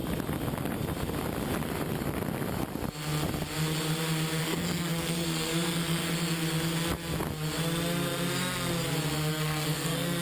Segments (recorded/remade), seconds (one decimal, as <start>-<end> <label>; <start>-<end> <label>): 0.0-4.4 recorded; 4.4-6.0 remade; 6.0-9.3 recorded; 9.3-10.2 remade